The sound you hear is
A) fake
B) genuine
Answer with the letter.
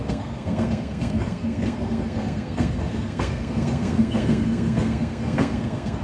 A